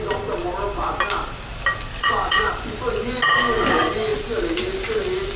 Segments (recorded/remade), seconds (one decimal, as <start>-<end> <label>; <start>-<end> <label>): 0.0-1.9 recorded; 1.9-2.5 remade; 2.5-5.4 recorded